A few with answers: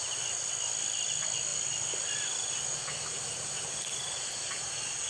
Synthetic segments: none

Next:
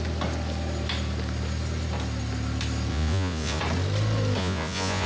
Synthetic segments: 2.9-3.6 (vocoder, Vocos); 4.4-5.1

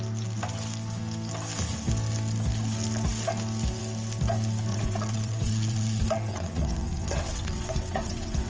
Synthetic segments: 4.7-8.5 (vocoder, WaveNeXt)